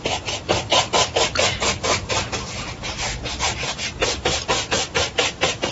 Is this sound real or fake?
real